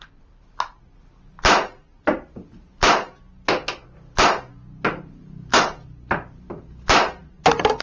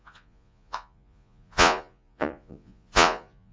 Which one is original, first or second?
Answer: first